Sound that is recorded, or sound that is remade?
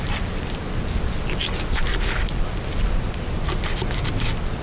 recorded